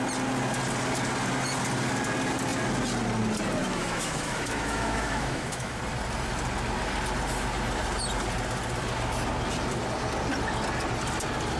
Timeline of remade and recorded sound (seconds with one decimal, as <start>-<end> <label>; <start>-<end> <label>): 0.0-3.6 recorded; 3.6-5.8 remade; 5.8-11.6 recorded